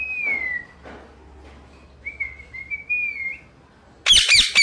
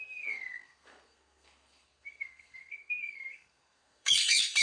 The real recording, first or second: first